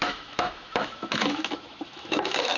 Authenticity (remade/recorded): remade